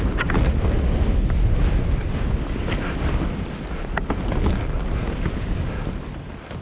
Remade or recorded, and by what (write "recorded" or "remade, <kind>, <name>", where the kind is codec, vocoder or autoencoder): recorded